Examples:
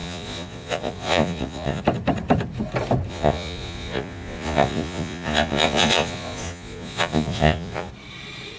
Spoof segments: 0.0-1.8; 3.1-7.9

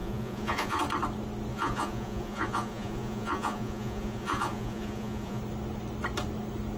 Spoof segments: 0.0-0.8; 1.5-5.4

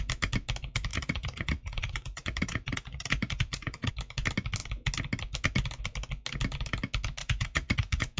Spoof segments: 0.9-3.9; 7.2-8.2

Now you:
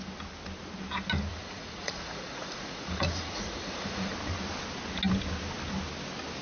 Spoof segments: 1.3-4.1